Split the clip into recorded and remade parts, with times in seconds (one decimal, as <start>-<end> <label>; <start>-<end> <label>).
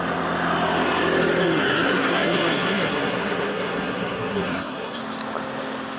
0.0-1.4 recorded; 1.4-5.0 remade; 5.0-6.0 recorded